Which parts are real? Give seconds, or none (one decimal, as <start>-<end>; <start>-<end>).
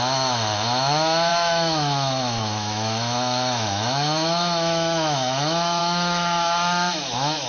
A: none